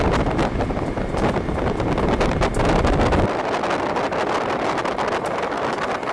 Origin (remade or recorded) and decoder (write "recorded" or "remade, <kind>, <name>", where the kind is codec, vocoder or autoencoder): recorded